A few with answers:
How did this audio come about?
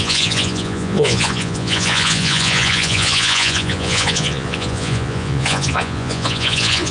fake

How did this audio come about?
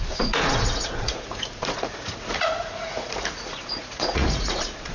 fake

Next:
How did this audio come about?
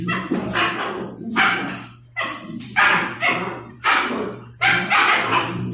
fake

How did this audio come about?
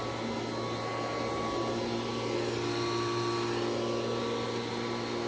real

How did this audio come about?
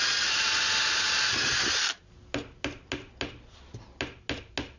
real